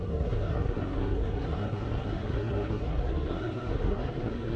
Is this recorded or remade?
remade